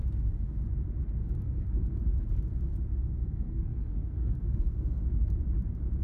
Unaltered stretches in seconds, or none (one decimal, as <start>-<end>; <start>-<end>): 0.0-1.2; 2.0-3.0; 5.4-6.0